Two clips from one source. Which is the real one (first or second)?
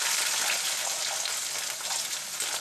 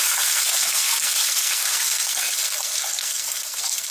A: first